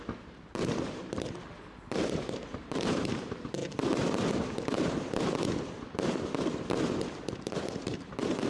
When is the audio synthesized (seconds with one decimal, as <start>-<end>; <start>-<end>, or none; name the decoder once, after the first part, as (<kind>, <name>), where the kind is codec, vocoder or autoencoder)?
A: 0.0-3.6 (vocoder, BigVGAN v2); 7.5-8.5